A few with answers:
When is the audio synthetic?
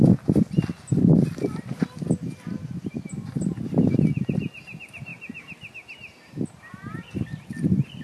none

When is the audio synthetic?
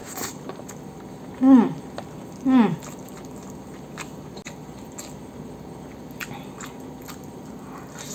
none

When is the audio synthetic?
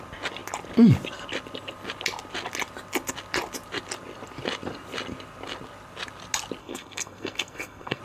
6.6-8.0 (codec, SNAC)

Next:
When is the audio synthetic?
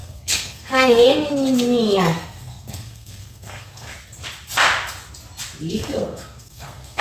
0.0-3.9 (codec, SNAC); 5.7-7.0